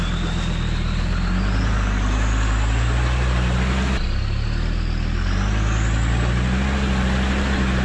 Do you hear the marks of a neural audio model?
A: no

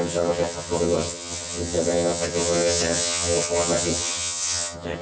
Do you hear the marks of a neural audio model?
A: yes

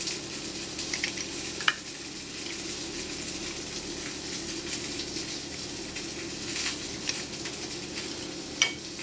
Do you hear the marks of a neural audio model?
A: no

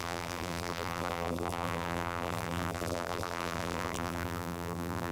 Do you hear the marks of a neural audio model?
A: yes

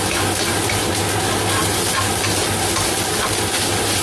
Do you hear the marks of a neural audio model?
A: no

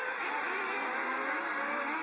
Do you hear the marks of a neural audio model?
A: no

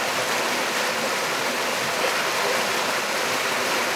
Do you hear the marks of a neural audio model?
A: no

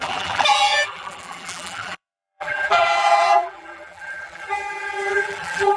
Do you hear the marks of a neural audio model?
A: yes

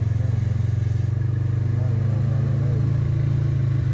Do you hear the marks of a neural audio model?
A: no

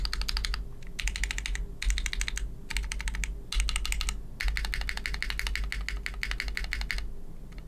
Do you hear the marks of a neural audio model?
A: no